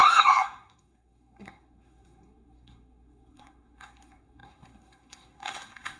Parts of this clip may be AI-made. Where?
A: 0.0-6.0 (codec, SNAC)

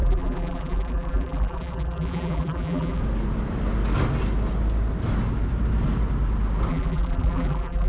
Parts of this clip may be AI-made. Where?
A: 0.0-3.0 (vocoder, BigVGAN v2); 6.7-7.9

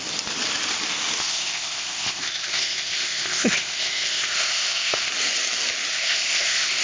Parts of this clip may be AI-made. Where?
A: 1.2-5.1 (codec, ZipCodec); 5.9-6.8

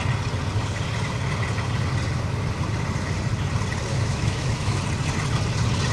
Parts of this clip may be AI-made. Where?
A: 3.9-4.8 (autoencoder, DAC-VAE)